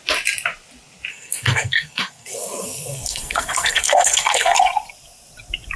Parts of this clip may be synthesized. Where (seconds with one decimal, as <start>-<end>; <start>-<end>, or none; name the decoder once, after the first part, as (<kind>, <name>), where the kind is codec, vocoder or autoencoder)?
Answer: 1.1-4.6 (codec, SNAC)